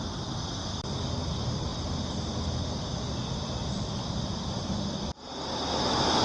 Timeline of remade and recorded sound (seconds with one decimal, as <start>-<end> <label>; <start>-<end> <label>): 0.0-6.2 recorded